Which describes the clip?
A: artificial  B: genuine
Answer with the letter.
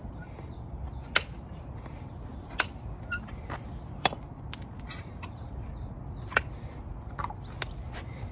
B